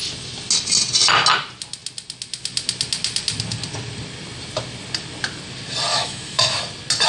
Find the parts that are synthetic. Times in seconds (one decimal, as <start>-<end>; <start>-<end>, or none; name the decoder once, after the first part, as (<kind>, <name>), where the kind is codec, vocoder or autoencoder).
5.9-6.6 (autoencoder, DAC-VAE)